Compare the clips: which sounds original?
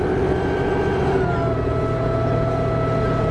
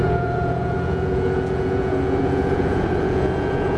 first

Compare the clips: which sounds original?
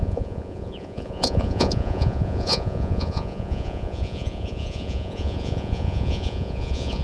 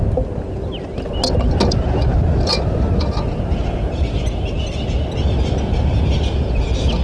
second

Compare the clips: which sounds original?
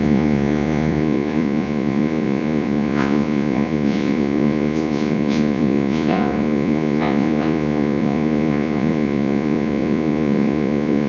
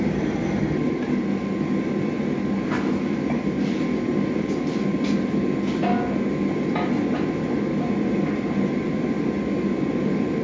second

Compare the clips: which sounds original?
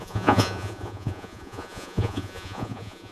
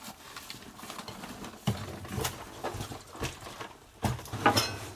second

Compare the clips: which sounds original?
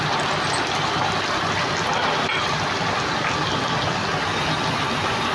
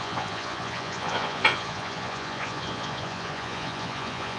first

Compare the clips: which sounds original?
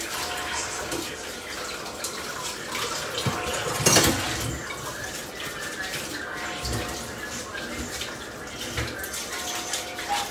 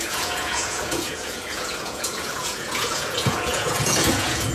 first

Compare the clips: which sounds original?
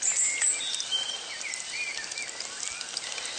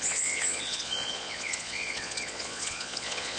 first